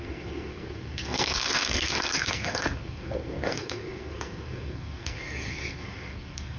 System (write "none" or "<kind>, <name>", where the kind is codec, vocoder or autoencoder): codec, SNAC